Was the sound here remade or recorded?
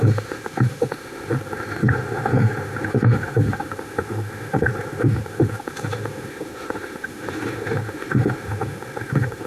remade